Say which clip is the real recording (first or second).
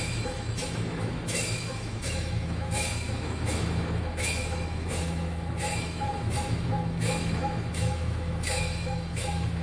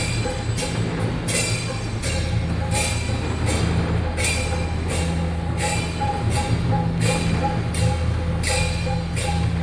second